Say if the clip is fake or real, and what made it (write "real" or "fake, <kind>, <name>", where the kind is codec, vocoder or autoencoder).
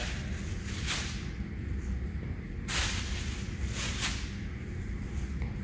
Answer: real